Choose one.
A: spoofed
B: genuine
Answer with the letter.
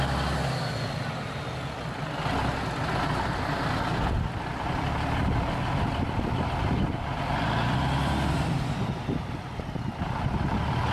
B